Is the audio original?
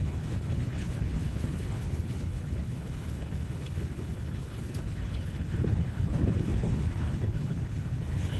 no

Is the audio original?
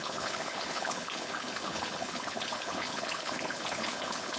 no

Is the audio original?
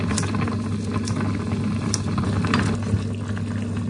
yes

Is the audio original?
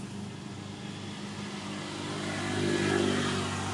yes